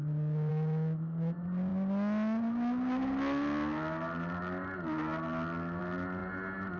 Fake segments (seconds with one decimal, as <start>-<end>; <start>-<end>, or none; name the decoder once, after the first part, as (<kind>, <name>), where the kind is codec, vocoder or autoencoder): none